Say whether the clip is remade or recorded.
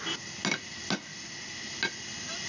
recorded